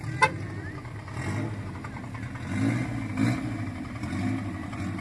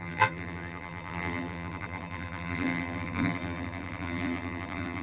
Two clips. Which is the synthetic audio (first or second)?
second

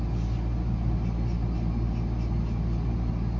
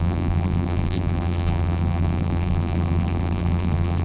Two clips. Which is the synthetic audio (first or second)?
second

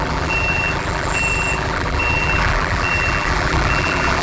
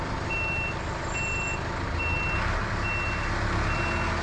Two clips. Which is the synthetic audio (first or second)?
first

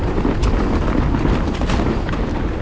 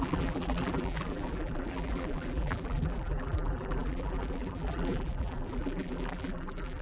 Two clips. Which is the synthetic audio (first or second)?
second